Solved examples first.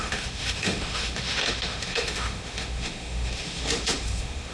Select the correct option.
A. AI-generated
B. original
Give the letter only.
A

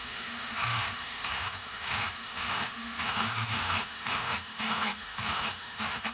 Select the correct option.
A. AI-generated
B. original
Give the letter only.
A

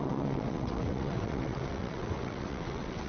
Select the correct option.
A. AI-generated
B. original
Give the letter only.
A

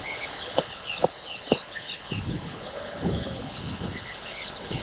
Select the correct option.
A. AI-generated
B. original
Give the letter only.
A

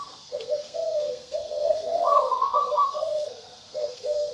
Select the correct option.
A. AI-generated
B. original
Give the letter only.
A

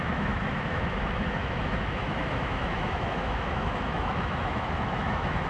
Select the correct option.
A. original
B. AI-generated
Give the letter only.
B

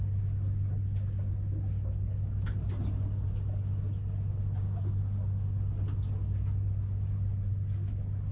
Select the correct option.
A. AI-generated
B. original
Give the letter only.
B